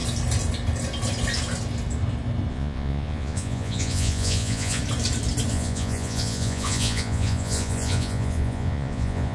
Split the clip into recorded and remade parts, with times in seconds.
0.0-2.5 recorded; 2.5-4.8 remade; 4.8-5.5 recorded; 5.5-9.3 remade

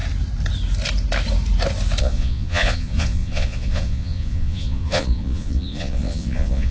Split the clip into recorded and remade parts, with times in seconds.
0.0-2.0 recorded; 2.0-6.7 remade